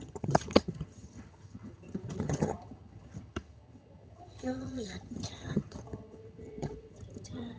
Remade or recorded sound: remade